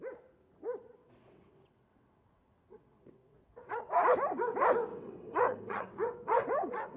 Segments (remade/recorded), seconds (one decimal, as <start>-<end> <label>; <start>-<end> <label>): 0.0-1.0 recorded; 1.0-3.8 remade; 3.8-4.9 recorded; 4.9-7.0 remade